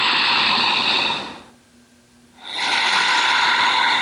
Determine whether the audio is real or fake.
real